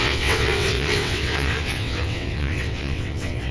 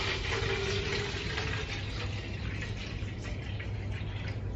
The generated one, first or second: first